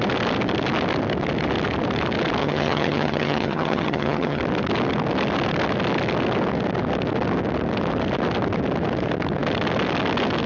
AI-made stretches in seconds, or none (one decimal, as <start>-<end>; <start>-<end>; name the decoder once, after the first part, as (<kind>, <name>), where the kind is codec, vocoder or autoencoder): 2.4-4.4 (vocoder, HiFi-GAN)